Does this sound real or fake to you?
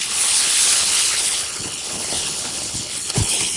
fake